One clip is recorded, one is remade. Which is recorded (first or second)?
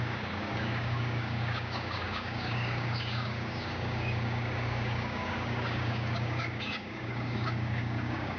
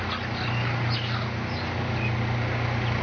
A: second